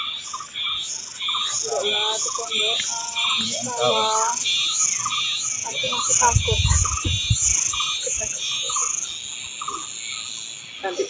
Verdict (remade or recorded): recorded